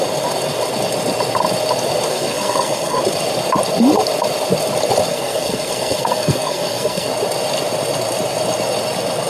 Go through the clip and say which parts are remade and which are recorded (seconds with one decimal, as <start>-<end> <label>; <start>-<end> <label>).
0.0-2.1 recorded; 2.1-3.0 remade; 3.0-5.1 recorded; 5.1-7.1 remade; 7.1-9.3 recorded